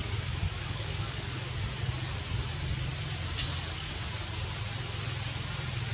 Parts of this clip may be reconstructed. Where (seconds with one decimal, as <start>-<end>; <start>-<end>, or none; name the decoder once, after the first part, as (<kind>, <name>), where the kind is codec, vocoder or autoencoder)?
0.0-1.5 (codec, DAC)